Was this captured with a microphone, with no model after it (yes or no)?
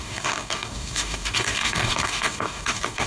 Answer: no